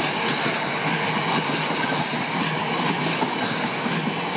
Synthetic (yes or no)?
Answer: no